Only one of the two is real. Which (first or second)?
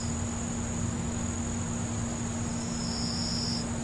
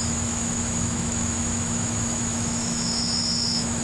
first